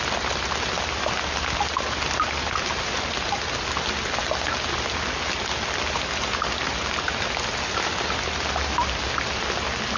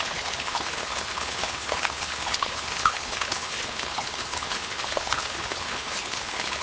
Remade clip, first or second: second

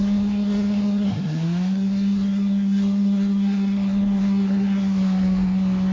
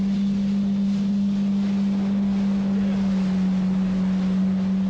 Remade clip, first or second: first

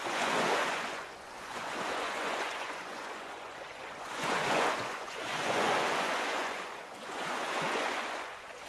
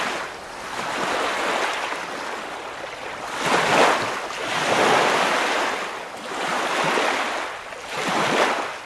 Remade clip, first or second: first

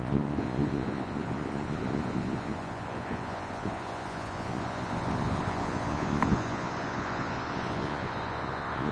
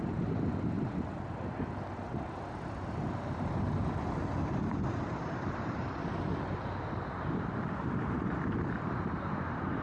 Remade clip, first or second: first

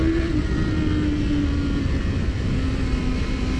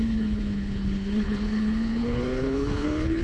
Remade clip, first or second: second